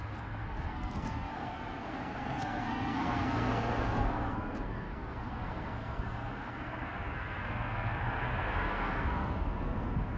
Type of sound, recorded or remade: remade